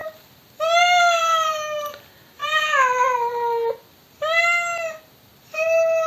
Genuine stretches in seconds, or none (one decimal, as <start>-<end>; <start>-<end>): 0.0-6.1